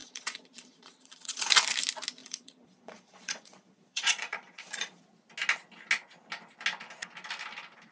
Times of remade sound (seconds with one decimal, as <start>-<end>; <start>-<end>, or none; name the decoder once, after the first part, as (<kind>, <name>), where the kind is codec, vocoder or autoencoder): 0.0-1.5 (vocoder, Vocos); 2.2-5.0